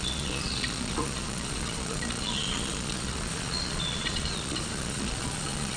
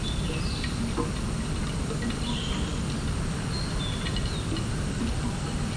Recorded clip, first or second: second